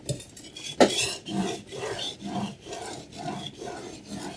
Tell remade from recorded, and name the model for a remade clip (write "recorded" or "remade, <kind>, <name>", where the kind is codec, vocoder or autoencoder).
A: recorded